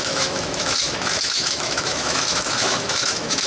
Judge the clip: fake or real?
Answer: fake